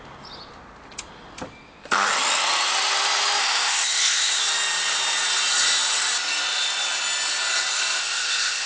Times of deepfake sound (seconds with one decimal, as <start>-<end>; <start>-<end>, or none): 3.4-4.4; 8.0-8.7